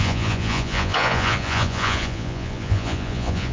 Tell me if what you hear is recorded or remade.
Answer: remade